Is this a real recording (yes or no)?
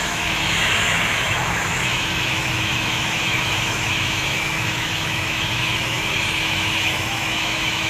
no